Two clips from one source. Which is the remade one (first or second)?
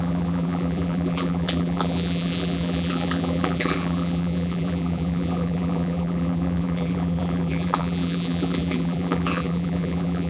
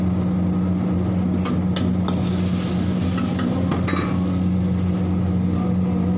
first